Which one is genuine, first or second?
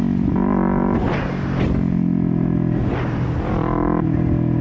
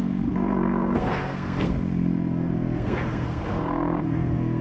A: first